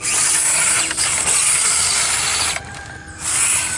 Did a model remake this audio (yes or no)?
yes